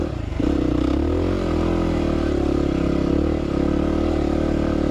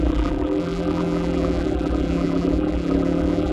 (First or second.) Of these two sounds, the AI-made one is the second